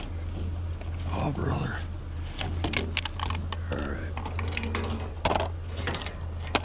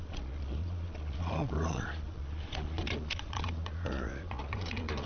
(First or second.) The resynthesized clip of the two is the second